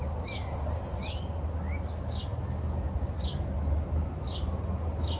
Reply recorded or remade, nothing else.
recorded